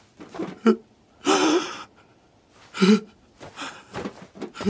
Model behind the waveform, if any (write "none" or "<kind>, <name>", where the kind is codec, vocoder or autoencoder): none